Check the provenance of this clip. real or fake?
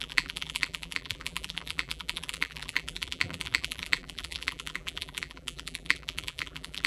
fake